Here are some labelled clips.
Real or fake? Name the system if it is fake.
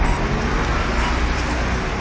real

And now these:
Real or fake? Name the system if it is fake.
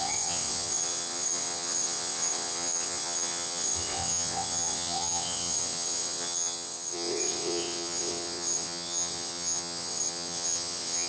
fake, vocoder, WaveNeXt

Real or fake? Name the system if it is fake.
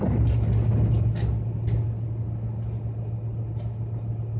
real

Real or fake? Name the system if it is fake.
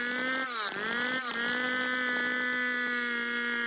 real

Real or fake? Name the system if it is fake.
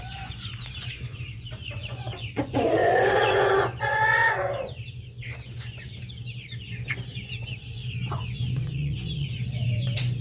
fake, vocoder, Vocos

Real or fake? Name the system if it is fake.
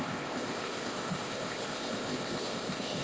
fake, codec, ZipCodec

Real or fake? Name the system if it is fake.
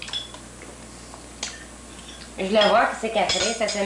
real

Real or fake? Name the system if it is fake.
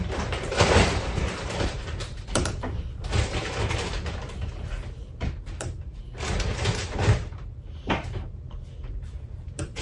fake, vocoder, BigVGAN v2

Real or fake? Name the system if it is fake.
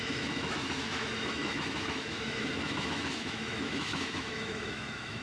fake, autoencoder, DAC-VAE